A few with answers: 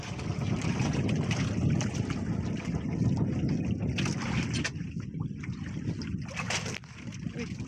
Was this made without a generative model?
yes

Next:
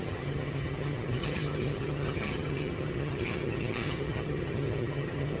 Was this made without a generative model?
no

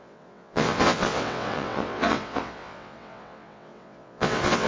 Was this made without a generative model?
no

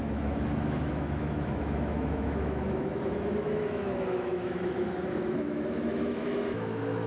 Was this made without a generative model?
no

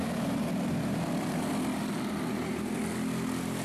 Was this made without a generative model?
yes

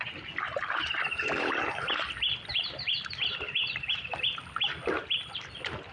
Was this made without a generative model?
yes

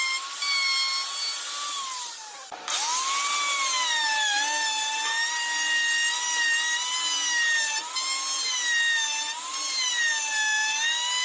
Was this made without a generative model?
yes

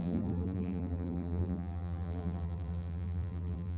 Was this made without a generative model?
no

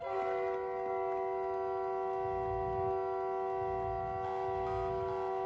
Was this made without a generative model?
yes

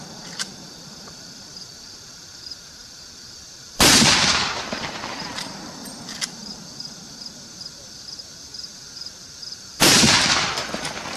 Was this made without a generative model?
no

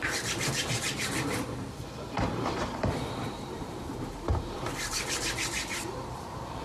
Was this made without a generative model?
no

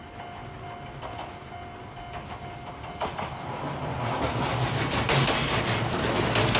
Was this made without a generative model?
yes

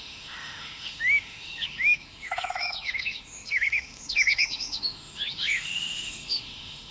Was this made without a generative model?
no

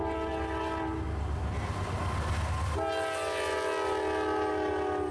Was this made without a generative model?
yes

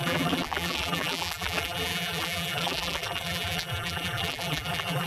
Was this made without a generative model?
no